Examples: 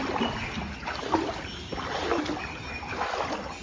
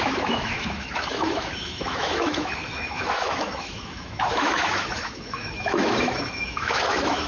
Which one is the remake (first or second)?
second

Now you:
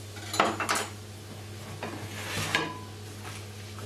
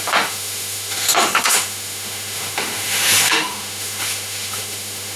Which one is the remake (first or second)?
second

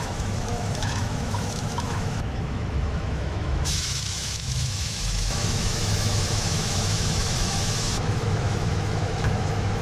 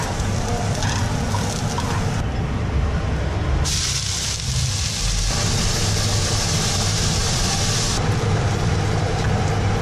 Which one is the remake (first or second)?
first